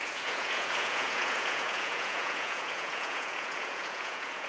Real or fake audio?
fake